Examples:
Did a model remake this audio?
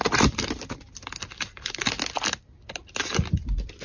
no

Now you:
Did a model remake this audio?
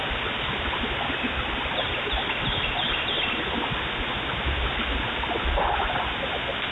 no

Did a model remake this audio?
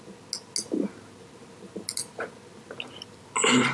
no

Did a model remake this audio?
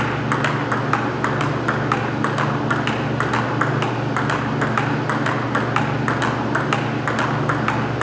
no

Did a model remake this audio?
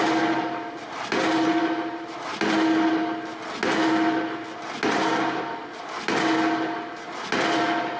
no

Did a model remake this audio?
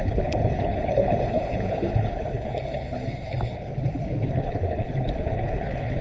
yes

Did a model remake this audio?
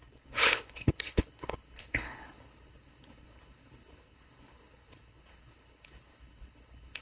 yes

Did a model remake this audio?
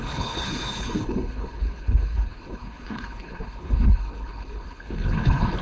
yes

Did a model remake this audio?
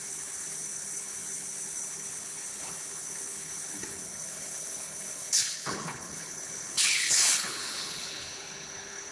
yes